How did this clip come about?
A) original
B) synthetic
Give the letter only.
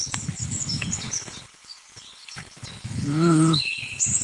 B